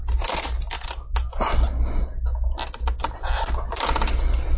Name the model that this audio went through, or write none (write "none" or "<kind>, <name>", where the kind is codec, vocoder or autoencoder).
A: none